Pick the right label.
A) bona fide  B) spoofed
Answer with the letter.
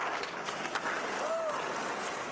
A